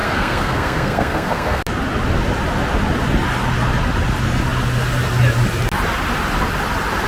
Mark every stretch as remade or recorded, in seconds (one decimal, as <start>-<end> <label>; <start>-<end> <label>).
0.0-1.6 remade; 1.6-7.1 recorded